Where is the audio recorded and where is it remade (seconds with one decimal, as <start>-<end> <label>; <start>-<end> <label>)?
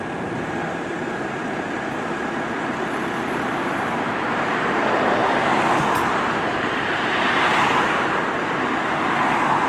0.0-5.2 remade; 5.2-6.8 recorded; 6.8-9.7 remade